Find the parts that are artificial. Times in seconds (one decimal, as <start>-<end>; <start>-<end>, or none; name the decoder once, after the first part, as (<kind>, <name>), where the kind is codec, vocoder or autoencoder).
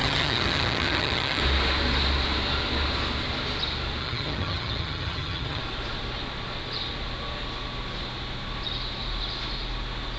0.0-1.4 (vocoder, HiFi-GAN); 4.0-5.6